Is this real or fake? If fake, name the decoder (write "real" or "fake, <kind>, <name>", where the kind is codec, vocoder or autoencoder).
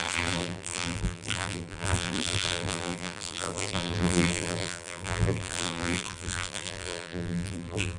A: fake, vocoder, BigVGAN v2